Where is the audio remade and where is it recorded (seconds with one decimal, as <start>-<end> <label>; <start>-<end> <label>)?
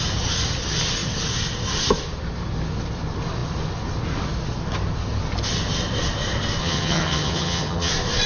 0.0-6.6 recorded; 6.6-7.9 remade; 7.9-8.3 recorded